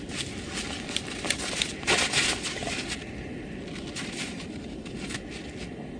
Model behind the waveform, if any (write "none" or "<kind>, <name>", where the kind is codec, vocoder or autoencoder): none